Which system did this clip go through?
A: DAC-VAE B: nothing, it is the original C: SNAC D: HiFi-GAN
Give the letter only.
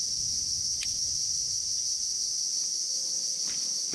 B